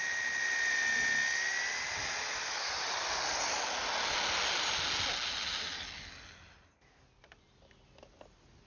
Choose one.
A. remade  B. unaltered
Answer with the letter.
B